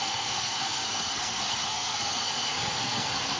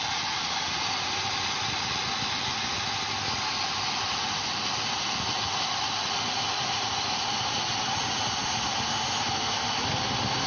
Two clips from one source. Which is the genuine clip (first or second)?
second